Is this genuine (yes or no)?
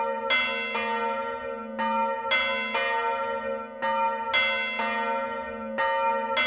yes